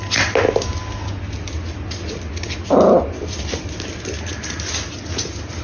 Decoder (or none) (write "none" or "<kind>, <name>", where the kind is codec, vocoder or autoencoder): none